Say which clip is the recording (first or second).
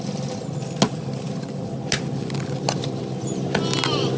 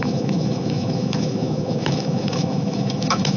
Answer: first